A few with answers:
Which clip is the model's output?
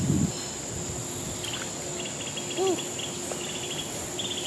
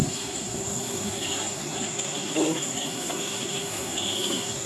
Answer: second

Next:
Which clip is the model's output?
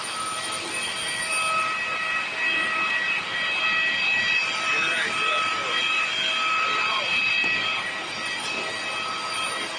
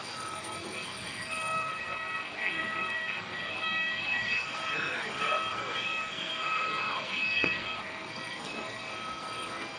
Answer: second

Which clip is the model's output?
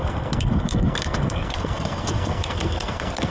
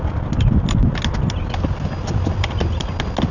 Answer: first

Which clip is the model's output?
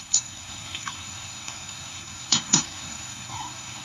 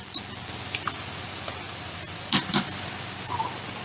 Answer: first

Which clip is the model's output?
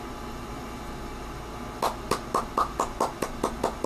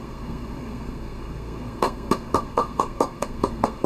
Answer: second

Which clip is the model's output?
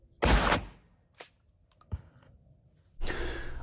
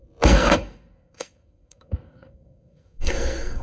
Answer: second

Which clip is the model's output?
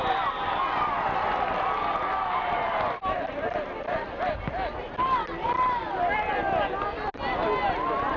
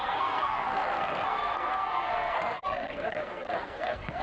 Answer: second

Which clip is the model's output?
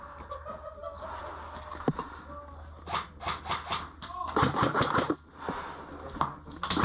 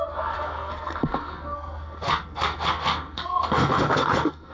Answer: second